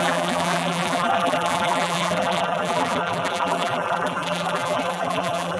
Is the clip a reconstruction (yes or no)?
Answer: yes